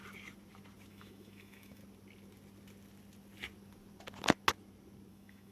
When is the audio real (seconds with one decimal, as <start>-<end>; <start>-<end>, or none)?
0.0-0.9; 1.8-5.1